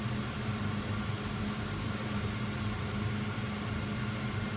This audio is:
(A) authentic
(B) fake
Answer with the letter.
A